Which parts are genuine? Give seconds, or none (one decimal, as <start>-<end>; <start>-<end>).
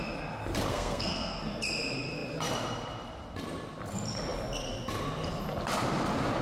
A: 0.0-0.7; 1.3-6.4